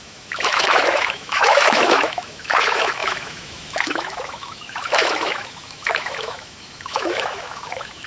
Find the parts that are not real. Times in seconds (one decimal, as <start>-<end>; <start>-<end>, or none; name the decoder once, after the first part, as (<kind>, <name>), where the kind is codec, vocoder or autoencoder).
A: 0.0-8.1 (autoencoder, DAC-VAE)